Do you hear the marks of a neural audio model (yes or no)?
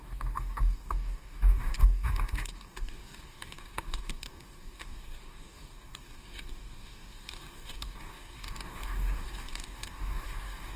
yes